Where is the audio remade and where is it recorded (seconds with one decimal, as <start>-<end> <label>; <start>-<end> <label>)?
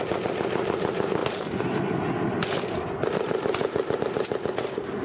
0.0-5.0 recorded